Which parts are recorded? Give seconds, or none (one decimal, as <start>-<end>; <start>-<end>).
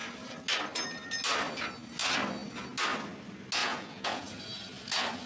0.0-3.6; 4.3-5.3